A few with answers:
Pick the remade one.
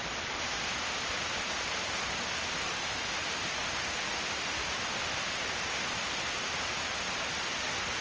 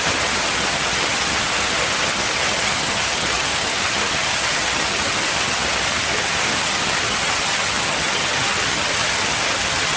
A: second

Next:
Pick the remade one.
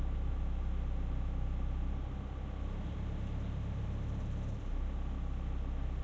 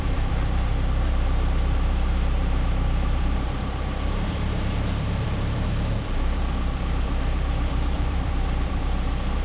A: second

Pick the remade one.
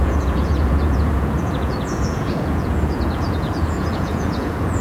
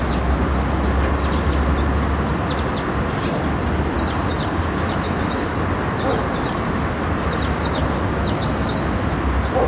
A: first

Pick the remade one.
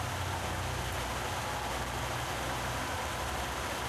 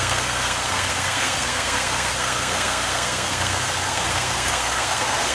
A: second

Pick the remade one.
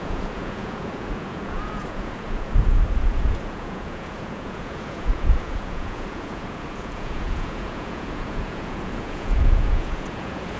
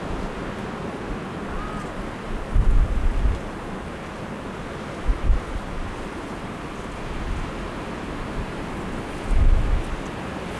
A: first